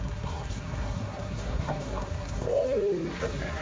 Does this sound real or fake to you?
fake